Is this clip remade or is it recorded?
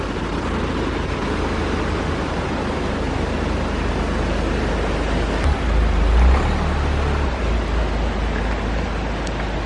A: recorded